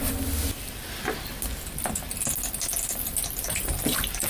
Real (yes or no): yes